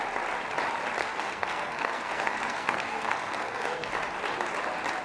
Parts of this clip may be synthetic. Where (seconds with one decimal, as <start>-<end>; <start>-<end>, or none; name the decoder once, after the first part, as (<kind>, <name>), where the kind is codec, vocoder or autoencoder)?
1.0-3.9 (codec, SNAC)

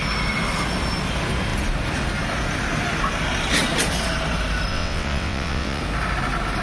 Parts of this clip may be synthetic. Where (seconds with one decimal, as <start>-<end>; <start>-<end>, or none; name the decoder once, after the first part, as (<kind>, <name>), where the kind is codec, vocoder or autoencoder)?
4.7-5.8 (vocoder, WaveNeXt)

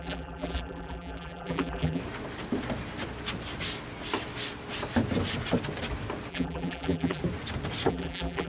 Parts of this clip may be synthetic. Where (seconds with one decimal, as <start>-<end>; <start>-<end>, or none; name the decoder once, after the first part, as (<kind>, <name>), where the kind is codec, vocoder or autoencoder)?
0.0-2.0 (vocoder, BigVGAN v2); 6.3-7.2; 7.9-8.5

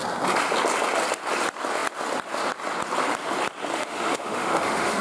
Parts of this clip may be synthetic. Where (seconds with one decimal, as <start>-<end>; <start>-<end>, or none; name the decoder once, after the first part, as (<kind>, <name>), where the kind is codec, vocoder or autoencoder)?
3.7-5.0 (autoencoder, DAC-VAE)

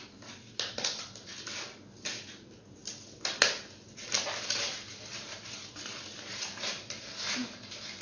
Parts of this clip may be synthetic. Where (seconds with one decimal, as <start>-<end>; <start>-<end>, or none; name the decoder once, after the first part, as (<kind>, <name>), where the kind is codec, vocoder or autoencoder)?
none

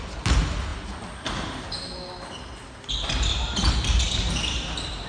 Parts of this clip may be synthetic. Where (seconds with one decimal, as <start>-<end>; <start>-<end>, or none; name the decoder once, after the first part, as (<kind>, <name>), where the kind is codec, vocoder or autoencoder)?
none